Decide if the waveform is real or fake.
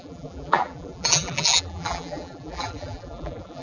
fake